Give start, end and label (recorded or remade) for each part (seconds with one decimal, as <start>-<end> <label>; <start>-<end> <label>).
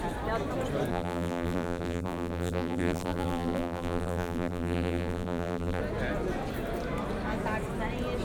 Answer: 0.0-0.9 recorded; 0.9-5.8 remade; 5.8-8.2 recorded